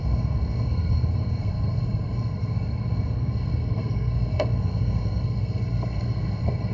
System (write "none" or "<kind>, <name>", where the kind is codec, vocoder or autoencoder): codec, SNAC